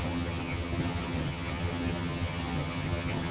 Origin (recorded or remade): remade